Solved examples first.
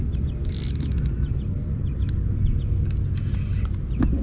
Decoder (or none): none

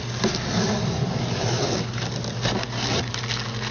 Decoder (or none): none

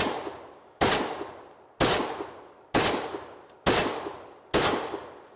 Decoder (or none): none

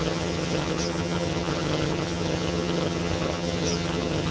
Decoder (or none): vocoder, HiFi-GAN